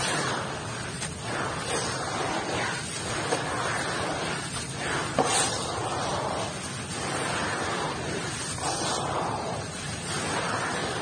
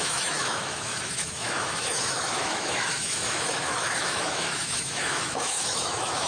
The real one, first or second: first